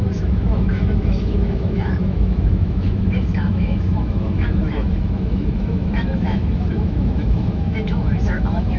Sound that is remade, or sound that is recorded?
remade